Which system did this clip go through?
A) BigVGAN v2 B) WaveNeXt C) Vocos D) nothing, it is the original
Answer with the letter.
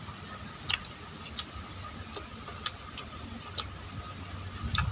D